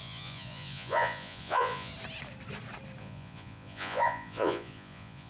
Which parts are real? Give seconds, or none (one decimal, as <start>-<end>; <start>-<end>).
1.9-3.0